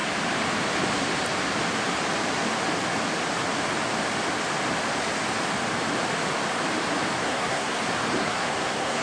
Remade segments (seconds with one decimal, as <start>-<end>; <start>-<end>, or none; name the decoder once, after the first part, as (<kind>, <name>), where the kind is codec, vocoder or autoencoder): 7.2-7.8 (codec, SNAC); 8.2-9.0